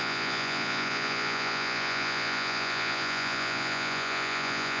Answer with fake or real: fake